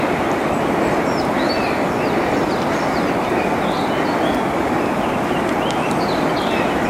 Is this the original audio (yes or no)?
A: yes